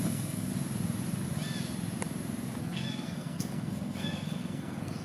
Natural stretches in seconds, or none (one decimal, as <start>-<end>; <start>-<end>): 0.5-2.6